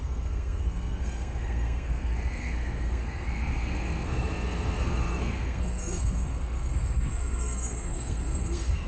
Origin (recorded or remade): remade